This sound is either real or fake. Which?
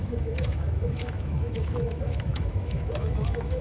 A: fake